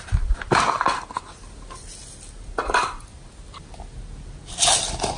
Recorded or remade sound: recorded